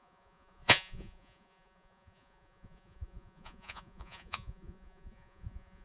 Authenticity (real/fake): fake